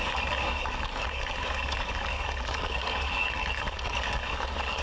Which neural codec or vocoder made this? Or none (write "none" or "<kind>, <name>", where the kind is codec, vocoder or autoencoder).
codec, DAC